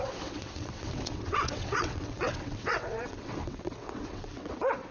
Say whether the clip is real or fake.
fake